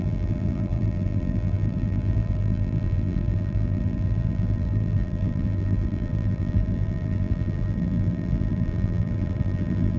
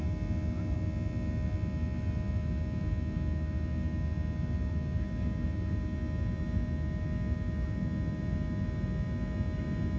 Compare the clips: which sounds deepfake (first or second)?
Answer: first